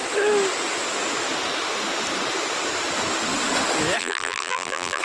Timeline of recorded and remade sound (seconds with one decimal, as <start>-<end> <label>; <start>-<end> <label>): 0.0-4.0 recorded; 4.0-5.0 remade